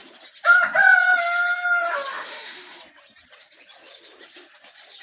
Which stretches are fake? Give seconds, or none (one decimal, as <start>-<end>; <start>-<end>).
2.1-2.8

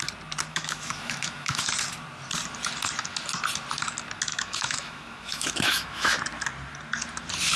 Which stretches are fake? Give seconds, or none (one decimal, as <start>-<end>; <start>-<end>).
0.5-1.6; 4.3-6.2

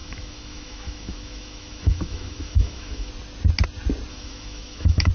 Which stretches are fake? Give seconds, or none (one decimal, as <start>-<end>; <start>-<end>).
0.0-3.1; 4.1-5.1

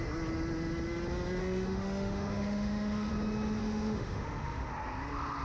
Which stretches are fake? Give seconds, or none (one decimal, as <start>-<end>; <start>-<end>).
1.4-3.1; 3.6-4.7